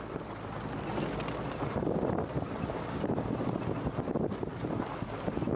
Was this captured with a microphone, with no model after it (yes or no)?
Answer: yes